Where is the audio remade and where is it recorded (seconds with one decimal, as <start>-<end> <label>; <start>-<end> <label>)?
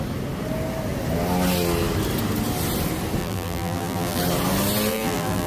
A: 0.0-3.2 recorded; 3.2-4.2 remade; 4.2-4.9 recorded; 4.9-5.5 remade